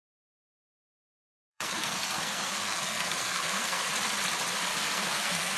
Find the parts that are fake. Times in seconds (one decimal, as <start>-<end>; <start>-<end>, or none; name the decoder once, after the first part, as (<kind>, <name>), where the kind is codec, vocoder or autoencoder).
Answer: 1.5-3.9 (codec, SNAC); 4.7-5.6